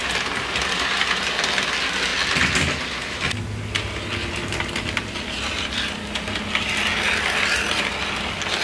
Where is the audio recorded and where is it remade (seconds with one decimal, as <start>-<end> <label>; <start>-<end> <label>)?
0.0-8.6 recorded